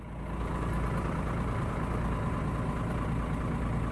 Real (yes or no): yes